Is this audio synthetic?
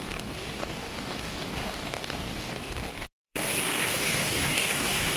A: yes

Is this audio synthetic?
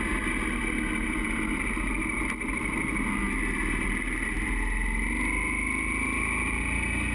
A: no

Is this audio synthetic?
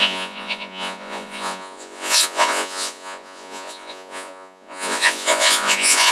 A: yes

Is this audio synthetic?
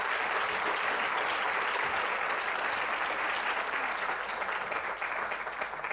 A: no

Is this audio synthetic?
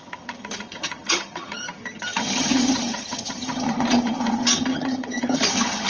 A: yes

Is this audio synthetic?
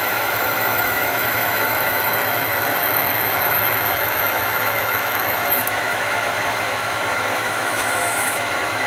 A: yes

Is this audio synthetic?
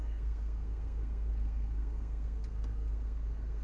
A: yes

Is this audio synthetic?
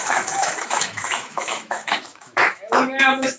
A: yes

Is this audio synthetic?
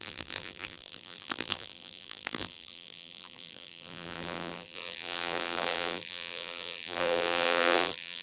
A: yes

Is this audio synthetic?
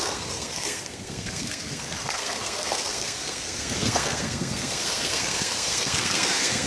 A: yes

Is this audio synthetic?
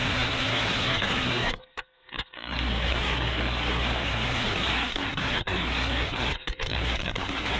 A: yes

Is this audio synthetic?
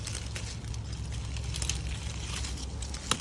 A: no